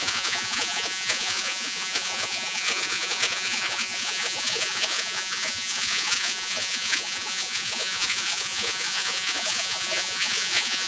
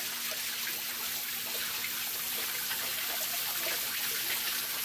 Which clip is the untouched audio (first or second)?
second